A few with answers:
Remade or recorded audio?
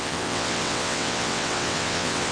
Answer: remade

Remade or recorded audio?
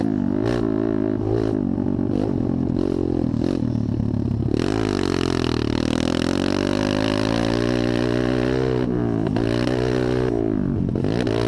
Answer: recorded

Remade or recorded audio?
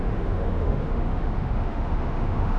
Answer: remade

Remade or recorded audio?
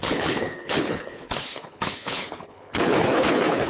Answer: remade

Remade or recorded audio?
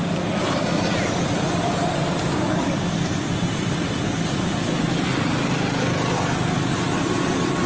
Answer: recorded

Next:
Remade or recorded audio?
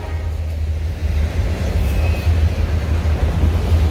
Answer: recorded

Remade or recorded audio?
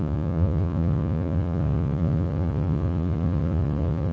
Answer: remade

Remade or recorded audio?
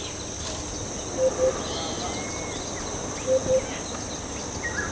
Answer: recorded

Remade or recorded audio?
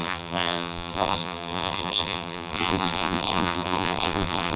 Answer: remade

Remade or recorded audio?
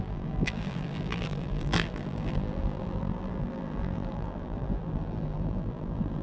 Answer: remade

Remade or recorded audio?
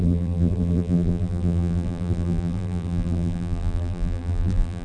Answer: remade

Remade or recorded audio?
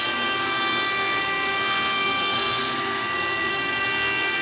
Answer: remade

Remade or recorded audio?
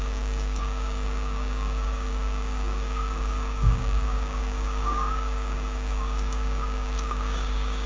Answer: remade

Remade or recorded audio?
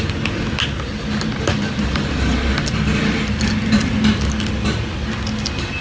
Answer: recorded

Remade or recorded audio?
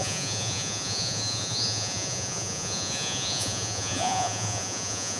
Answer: remade